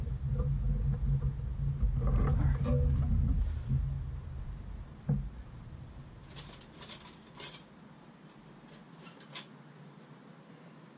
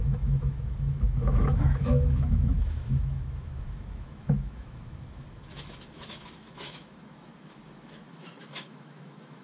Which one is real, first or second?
first